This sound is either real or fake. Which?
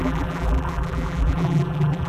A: fake